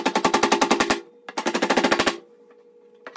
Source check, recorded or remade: recorded